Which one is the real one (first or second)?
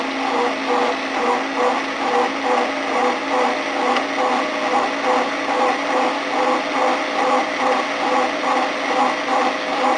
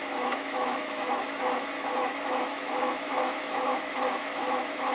first